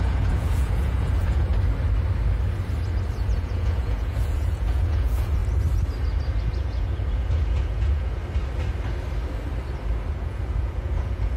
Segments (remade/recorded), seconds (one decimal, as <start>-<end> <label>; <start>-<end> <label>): 0.0-1.5 remade; 1.5-3.3 recorded; 3.3-5.4 remade; 5.4-6.4 recorded; 6.4-8.2 remade; 8.2-10.1 recorded; 10.1-11.4 remade